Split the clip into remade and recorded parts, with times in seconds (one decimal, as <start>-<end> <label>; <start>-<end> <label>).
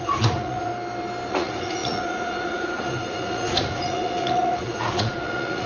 0.0-0.7 remade; 0.7-1.3 recorded; 1.3-5.7 remade